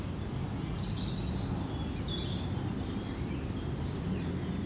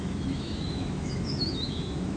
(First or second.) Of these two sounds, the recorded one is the first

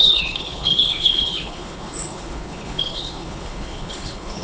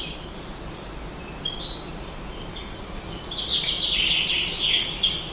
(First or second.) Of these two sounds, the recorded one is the second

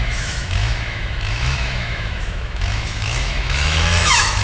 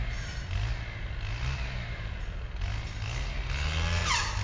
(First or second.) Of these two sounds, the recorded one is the second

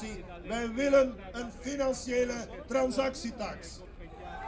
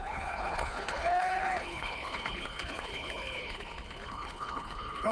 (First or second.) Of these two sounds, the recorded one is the first